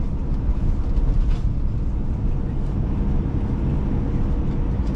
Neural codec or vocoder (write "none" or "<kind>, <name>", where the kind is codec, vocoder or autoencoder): none